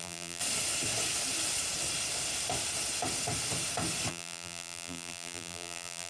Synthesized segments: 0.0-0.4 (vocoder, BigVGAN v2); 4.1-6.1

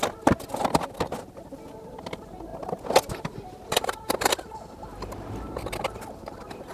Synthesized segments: none

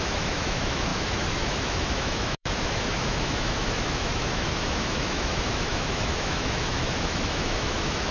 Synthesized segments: 0.0-8.1 (autoencoder, DAC-VAE)

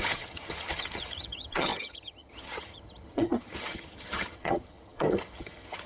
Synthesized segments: 0.0-5.9 (vocoder, HiFi-GAN)